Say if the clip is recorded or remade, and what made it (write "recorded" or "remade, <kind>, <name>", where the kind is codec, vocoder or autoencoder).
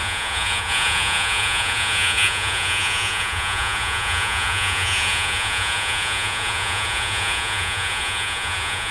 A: remade, vocoder, Vocos